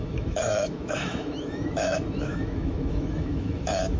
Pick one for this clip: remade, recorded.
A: remade